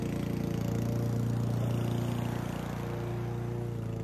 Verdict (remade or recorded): recorded